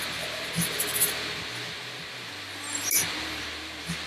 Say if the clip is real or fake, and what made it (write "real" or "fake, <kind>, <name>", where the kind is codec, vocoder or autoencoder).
real